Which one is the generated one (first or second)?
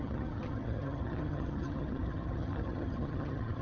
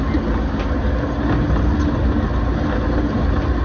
first